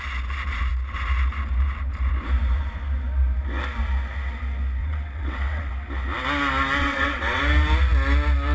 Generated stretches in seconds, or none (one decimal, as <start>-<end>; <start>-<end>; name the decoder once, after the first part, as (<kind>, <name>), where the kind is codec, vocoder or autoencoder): 4.8-5.7 (vocoder, WaveNeXt); 6.8-7.4